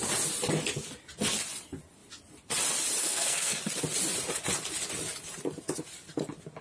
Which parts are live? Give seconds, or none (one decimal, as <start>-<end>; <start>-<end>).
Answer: 0.0-3.0; 3.6-6.6